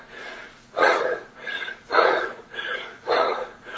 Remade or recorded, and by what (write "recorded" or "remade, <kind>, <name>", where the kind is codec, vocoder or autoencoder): remade, vocoder, Vocos